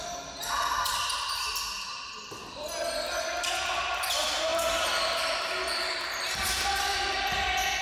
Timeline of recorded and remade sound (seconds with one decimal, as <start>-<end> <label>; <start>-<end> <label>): 0.0-7.8 recorded